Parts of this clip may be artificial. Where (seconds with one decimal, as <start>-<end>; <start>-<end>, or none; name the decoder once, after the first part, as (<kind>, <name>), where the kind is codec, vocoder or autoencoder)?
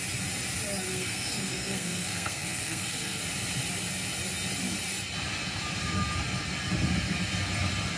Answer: 0.9-3.2 (codec, SNAC)